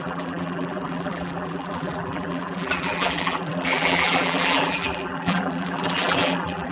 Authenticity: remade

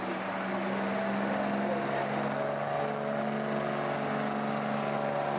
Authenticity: recorded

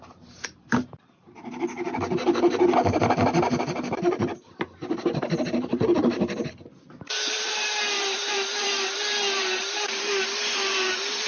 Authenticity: remade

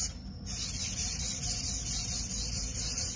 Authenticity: recorded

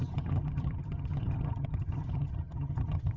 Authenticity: remade